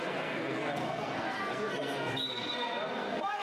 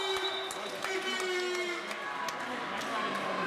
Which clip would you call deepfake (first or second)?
first